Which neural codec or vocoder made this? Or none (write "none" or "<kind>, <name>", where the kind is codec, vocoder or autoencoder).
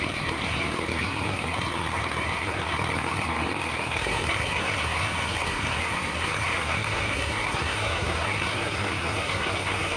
codec, SNAC